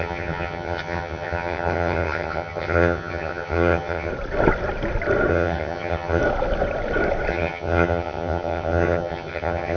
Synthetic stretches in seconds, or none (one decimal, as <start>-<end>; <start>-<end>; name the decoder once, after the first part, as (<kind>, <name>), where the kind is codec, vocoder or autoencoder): 0.0-4.1 (vocoder, HiFi-GAN); 5.3-6.2; 7.3-9.8